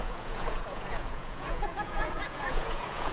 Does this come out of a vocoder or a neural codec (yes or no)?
yes